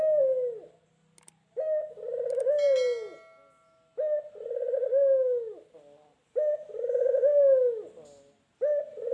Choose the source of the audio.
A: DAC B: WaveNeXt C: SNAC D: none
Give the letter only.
D